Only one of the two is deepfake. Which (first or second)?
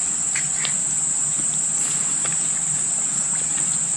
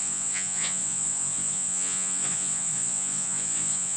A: second